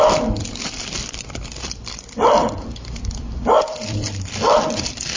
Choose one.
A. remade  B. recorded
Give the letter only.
A